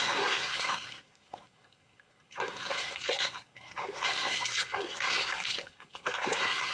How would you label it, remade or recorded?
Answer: remade